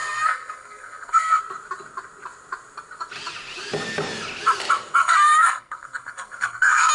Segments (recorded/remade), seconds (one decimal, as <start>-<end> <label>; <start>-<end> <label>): 0.0-1.4 remade; 1.4-5.0 recorded; 5.0-6.9 remade